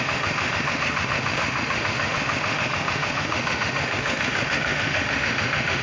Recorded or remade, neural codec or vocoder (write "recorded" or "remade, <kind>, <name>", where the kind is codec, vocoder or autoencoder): remade, autoencoder, DAC-VAE